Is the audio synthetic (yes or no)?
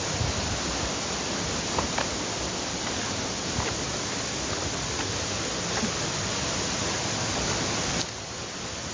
no